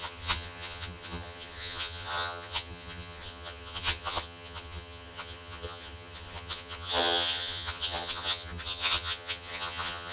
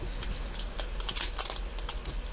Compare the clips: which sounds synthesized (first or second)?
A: first